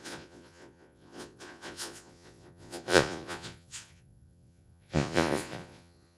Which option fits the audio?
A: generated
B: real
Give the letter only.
A